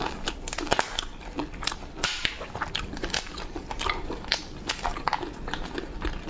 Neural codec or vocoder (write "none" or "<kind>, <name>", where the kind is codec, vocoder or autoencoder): none